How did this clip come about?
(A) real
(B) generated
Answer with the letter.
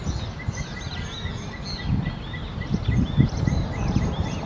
A